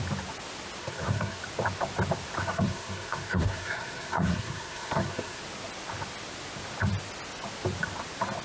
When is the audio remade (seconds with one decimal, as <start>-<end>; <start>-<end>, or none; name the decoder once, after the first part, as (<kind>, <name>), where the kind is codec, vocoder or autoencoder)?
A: 0.8-1.4 (codec, SNAC); 2.4-5.4